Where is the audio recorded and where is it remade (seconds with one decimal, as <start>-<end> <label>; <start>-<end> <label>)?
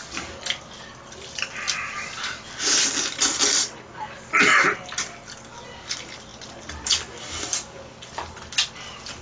0.0-9.2 recorded